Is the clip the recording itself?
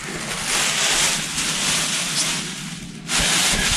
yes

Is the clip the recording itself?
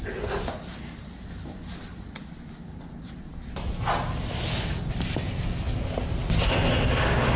yes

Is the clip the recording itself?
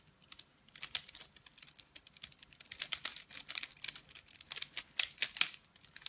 yes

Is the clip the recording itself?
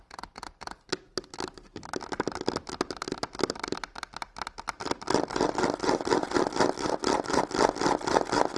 yes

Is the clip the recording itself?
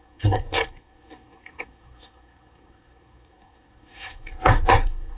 no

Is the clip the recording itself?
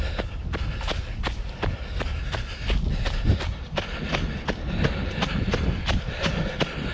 yes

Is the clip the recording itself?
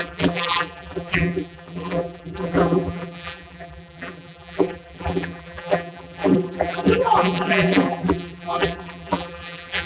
no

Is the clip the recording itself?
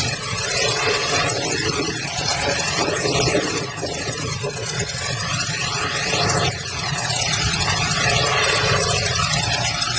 no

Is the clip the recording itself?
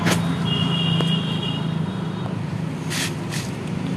yes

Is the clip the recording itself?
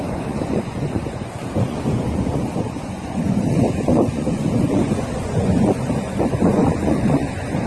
no